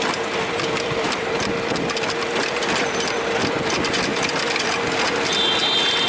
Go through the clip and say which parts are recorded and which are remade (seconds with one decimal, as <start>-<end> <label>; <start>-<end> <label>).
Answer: 0.0-1.0 recorded; 1.0-4.7 remade; 4.7-6.1 recorded